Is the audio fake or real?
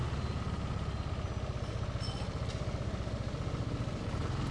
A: real